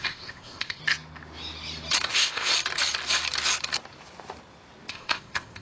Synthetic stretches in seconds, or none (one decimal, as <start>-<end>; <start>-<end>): 0.0-0.8; 2.1-2.5; 4.9-5.6